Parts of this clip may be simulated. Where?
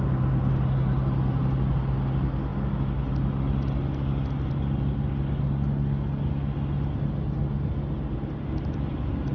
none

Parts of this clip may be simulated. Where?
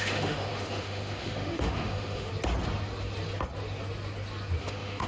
0.0-2.3; 4.6-5.1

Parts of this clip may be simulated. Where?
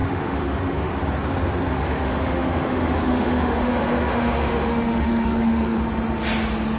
0.0-1.0; 1.7-5.8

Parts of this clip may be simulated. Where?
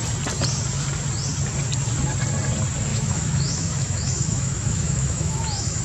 2.9-5.8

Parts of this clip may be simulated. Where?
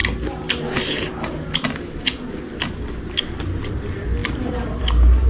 none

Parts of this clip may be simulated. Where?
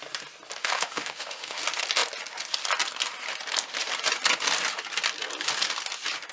0.6-1.6